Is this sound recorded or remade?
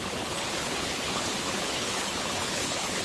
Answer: remade